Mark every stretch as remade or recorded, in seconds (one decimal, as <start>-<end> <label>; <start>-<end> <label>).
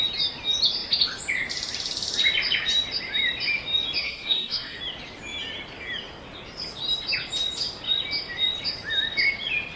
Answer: 0.0-4.0 recorded; 4.0-4.8 remade; 4.8-9.8 recorded